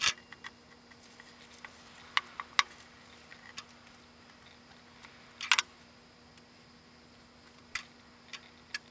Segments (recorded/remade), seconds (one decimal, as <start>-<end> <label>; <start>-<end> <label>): 0.0-8.9 recorded